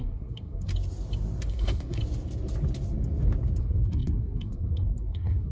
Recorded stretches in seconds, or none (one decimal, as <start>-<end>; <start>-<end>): 0.7-1.5; 2.0-3.6